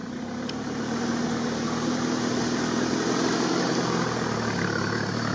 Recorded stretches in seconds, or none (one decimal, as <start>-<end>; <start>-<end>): 0.0-5.3